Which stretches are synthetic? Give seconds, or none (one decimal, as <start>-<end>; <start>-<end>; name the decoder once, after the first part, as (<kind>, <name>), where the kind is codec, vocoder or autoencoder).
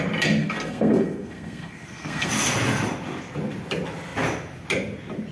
0.4-2.3 (codec, SNAC)